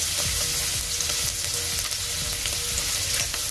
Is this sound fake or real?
real